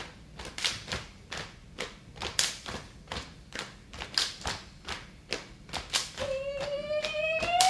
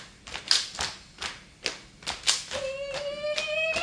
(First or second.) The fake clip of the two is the first